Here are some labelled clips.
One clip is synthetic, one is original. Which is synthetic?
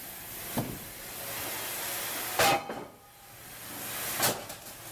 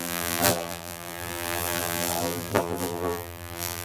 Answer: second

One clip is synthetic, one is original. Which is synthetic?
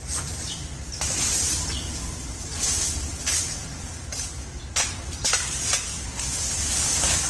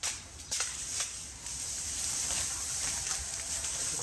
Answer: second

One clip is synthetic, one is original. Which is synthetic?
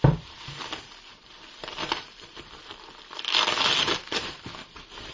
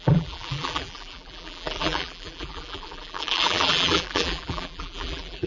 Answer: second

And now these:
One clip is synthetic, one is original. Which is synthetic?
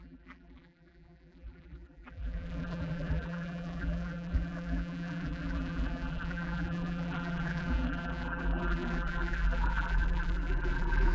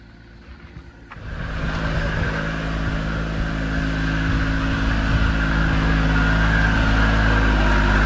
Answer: first